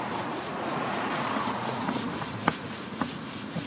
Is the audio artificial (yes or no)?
yes